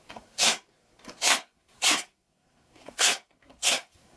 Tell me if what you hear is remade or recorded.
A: remade